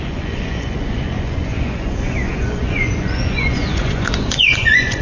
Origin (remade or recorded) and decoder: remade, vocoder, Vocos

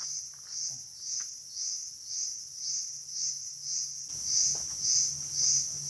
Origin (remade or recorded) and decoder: recorded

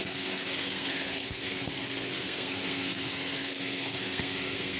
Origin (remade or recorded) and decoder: remade, codec, SNAC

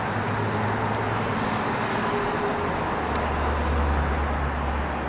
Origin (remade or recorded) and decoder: recorded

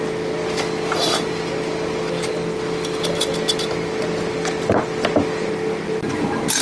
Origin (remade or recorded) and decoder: recorded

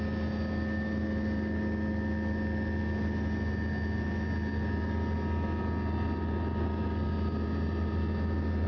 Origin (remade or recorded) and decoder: recorded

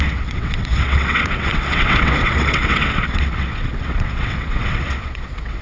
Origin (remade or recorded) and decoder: remade, vocoder, WaveNeXt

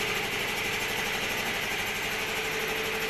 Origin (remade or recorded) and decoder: recorded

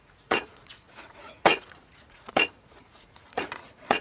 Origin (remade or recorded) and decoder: remade, vocoder, Vocos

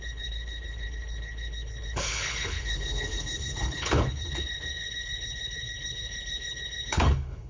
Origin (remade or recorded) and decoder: remade, codec, HILCodec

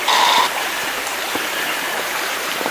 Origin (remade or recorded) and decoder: remade, vocoder, BigVGAN v2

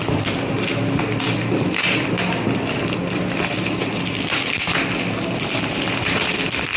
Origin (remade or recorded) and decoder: recorded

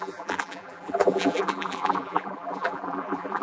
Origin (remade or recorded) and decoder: remade, vocoder, BigVGAN v2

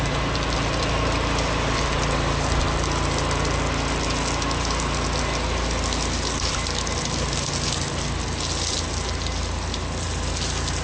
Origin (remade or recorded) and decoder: recorded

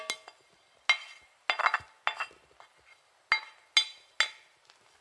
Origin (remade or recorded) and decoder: recorded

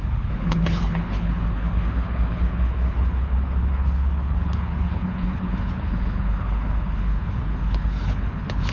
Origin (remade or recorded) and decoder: remade, codec, HILCodec